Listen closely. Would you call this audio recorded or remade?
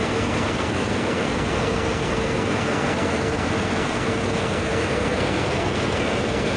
remade